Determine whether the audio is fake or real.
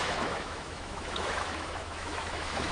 fake